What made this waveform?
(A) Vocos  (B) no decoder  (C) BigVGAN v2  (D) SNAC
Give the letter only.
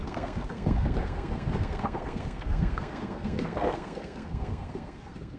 D